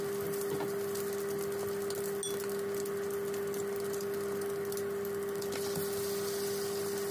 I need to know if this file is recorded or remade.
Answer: recorded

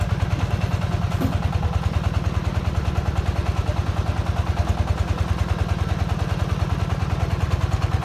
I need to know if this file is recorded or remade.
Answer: recorded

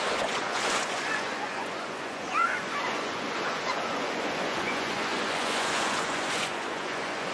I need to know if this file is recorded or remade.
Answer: remade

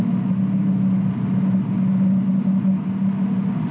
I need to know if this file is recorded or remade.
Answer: recorded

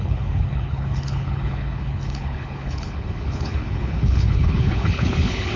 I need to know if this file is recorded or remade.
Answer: remade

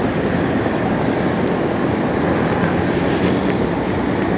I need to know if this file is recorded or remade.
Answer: recorded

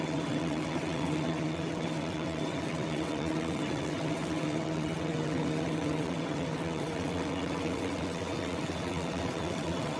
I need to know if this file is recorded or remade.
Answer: remade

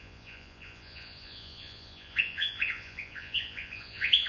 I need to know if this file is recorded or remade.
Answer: remade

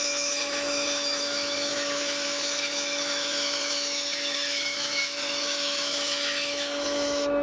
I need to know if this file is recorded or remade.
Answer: remade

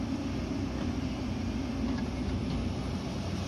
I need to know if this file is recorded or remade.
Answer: recorded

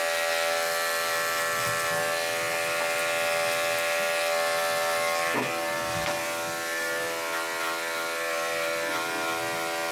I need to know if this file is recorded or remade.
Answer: recorded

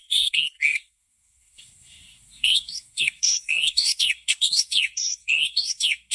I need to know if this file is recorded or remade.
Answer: remade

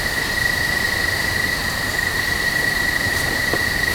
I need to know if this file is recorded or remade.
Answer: remade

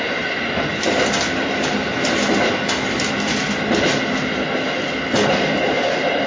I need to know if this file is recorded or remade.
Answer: recorded